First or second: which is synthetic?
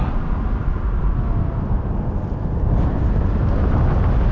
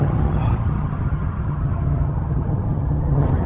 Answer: second